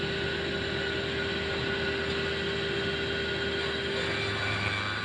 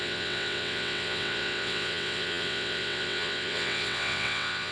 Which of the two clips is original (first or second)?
first